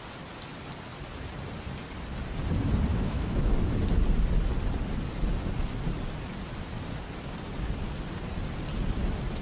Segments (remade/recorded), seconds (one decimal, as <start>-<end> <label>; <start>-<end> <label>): 0.0-2.9 recorded; 2.9-3.5 remade; 3.5-9.4 recorded